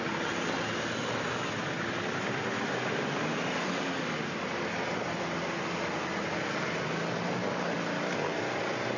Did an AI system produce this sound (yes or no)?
no